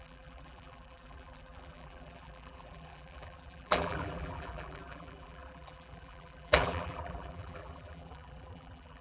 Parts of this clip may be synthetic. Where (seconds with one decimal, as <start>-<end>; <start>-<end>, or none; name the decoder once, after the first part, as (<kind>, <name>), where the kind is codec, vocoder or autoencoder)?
0.0-9.0 (vocoder, BigVGAN v2)